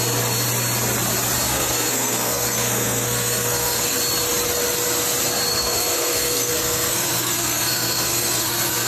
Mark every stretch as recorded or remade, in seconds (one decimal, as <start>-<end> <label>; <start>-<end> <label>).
0.0-1.5 recorded; 1.5-4.0 remade; 4.0-5.5 recorded; 5.5-8.9 remade